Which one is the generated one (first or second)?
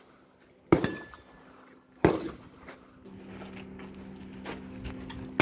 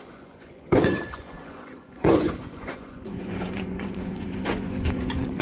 second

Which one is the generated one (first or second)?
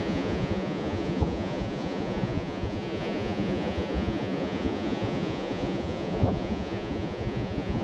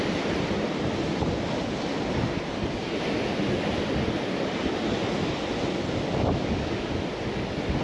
first